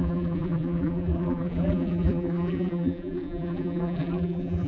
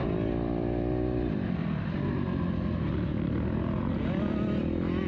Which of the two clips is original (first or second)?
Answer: second